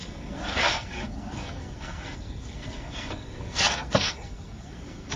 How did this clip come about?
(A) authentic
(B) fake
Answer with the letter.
B